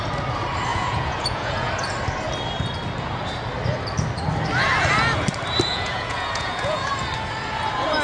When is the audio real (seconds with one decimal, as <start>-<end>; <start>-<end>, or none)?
0.0-0.7; 1.7-5.7; 6.9-8.0